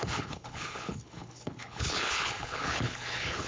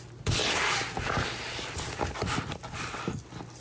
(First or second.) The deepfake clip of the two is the first